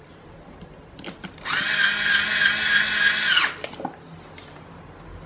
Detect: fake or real real